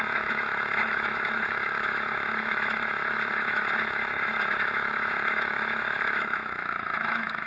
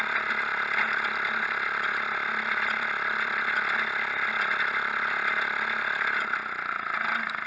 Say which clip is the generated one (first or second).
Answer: first